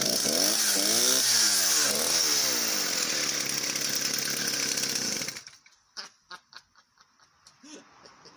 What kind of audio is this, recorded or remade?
recorded